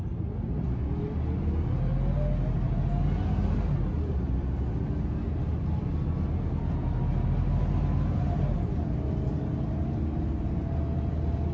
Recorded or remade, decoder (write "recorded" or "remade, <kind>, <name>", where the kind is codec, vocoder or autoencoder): recorded